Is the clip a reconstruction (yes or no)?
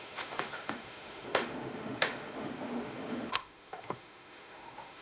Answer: yes